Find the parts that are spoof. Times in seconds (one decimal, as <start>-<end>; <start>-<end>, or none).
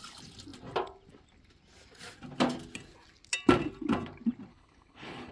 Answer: 4.5-5.3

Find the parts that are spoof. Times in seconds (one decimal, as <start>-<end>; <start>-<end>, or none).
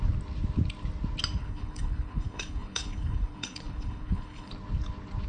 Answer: 1.4-4.5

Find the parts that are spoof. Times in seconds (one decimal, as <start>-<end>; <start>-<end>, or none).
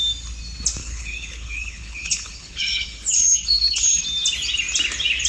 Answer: 0.8-4.0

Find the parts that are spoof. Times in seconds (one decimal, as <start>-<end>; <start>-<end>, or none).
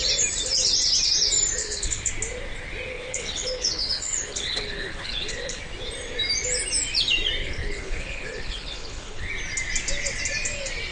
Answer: 1.6-2.1; 2.9-5.6; 7.4-9.3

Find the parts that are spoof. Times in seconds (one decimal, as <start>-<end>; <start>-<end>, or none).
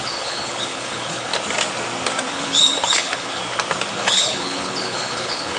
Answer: 0.0-1.3; 2.3-3.4; 3.9-5.6